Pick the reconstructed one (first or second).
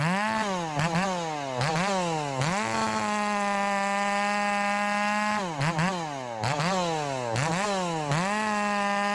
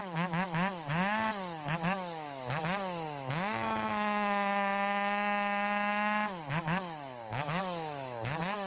second